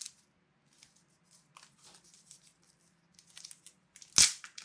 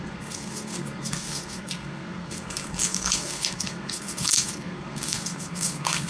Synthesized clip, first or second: second